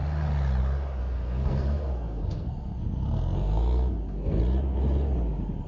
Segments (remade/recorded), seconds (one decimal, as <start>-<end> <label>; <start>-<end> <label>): 0.0-1.0 recorded; 1.0-4.4 remade; 4.4-5.7 recorded